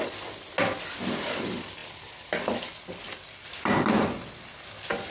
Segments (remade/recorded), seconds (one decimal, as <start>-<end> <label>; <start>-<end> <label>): 0.0-5.1 recorded